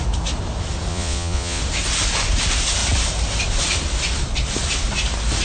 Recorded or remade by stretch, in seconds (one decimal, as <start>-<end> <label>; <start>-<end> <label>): 0.0-0.9 recorded; 0.9-1.6 remade; 1.6-5.4 recorded

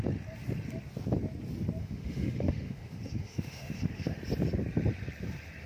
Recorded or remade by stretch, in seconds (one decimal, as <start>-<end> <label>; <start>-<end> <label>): 0.0-1.8 recorded; 1.8-4.2 remade; 4.2-5.7 recorded